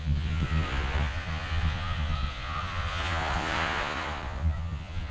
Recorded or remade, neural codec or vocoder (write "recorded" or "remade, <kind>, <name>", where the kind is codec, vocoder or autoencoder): remade, vocoder, Vocos